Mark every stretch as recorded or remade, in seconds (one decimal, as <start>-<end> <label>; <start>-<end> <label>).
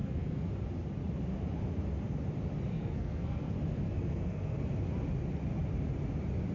0.0-0.5 remade; 0.5-2.7 recorded; 2.7-3.5 remade; 3.5-4.0 recorded; 4.0-4.6 remade; 4.6-6.5 recorded